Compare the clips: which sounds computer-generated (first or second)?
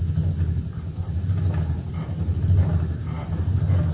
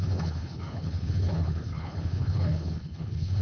second